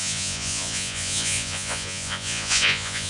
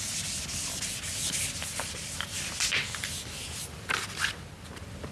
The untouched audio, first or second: second